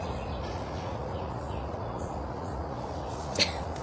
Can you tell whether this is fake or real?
fake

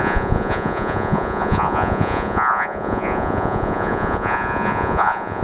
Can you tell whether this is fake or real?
fake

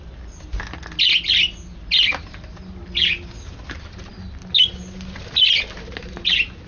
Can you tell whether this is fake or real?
real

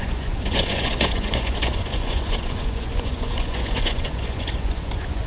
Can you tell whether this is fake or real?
fake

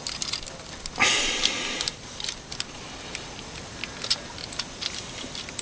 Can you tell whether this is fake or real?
real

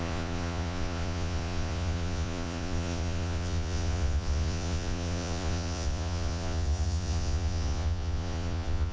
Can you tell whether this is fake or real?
fake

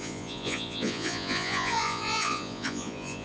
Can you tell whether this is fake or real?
fake